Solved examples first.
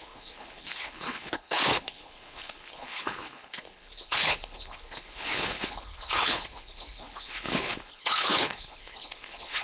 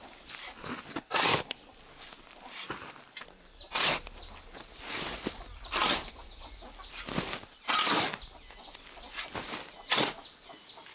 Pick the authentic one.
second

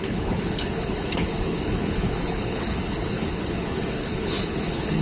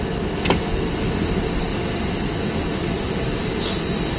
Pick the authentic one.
second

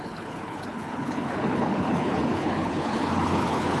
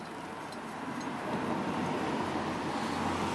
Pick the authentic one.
second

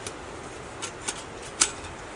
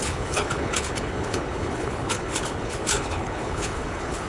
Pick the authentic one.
first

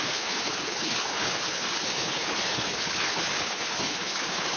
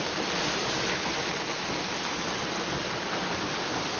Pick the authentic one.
second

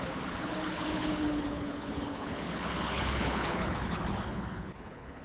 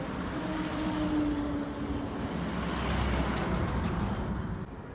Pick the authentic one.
second